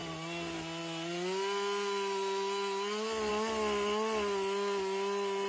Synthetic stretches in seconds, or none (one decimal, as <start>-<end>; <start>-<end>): none